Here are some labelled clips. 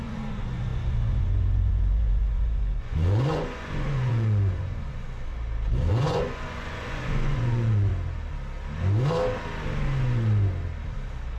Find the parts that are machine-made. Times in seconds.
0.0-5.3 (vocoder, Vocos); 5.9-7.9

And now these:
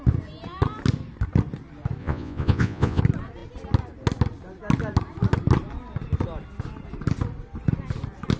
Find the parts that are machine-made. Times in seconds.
2.0-3.0 (vocoder, Vocos)

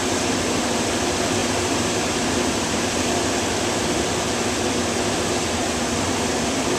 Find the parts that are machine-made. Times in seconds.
1.4-2.8 (vocoder, BigVGAN v2)

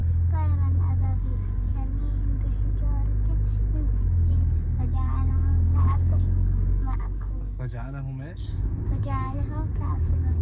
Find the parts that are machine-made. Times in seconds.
1.1-1.7 (codec, DAC); 4.8-10.4